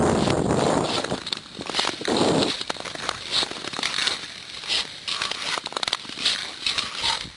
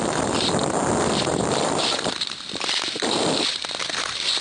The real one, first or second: first